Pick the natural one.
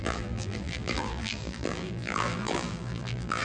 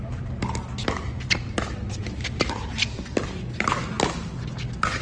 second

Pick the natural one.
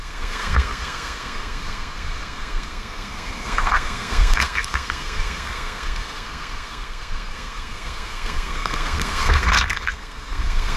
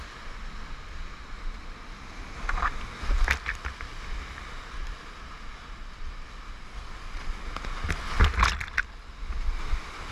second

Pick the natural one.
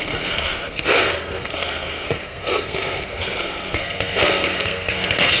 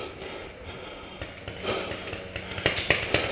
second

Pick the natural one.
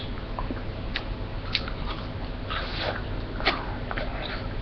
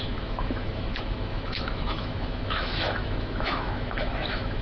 first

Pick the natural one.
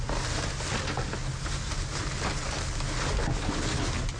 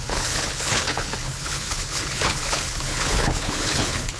first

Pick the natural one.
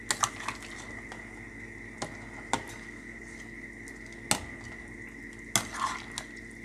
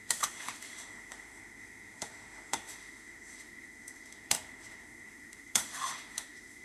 first